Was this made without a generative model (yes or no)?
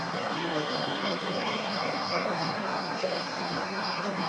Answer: no